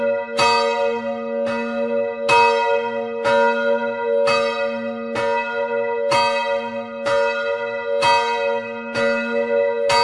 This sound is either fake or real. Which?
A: real